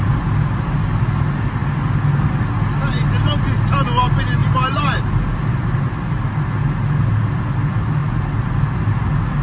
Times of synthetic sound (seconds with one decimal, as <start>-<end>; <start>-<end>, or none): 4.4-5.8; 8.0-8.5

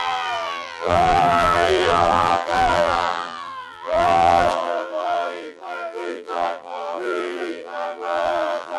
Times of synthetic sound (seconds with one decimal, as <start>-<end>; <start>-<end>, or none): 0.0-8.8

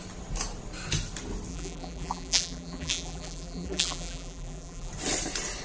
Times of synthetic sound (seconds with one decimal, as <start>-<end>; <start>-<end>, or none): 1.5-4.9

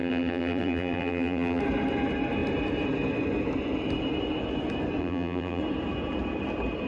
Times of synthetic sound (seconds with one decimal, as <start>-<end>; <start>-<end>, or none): 0.0-1.6; 5.0-5.6

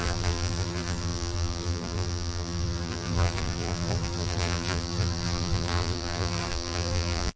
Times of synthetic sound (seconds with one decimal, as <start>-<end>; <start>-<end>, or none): 0.0-7.4

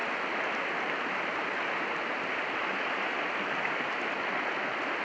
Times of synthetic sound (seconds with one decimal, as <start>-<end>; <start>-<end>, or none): none

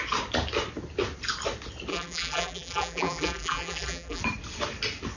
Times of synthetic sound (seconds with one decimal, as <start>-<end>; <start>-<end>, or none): 1.9-4.2